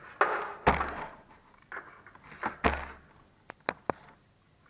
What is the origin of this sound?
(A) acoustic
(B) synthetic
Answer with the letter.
A